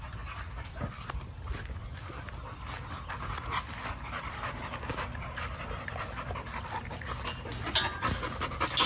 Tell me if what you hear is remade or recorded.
recorded